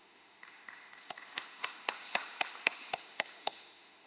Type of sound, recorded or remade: remade